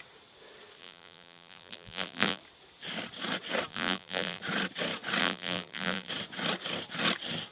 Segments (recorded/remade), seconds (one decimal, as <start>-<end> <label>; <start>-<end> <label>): 0.0-0.8 recorded; 0.8-2.4 remade; 2.4-3.7 recorded; 3.7-4.4 remade; 4.4-5.2 recorded; 5.2-6.1 remade; 6.1-7.5 recorded